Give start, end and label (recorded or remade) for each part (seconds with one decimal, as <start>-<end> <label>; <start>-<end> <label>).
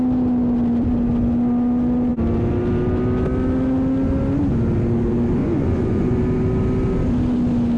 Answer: 0.0-5.4 recorded; 5.4-6.2 remade; 6.2-7.8 recorded